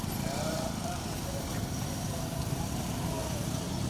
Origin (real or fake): fake